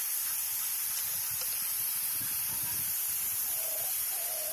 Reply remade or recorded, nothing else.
remade